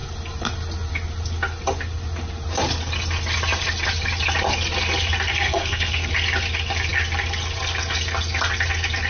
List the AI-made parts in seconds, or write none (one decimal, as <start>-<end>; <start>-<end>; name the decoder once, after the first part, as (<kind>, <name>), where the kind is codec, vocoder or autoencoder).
5.3-6.1 (codec, SNAC)